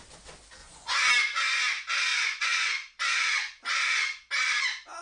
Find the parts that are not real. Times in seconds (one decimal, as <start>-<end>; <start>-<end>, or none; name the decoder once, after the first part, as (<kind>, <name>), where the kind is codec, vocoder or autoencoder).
0.6-1.1 (vocoder, Vocos); 2.1-4.3